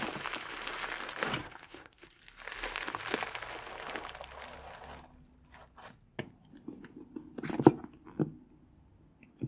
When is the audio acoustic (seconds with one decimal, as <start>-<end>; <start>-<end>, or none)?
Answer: 0.0-1.4; 2.2-9.5